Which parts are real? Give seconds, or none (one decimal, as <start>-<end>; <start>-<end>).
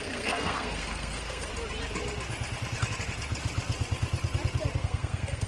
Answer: 1.5-4.8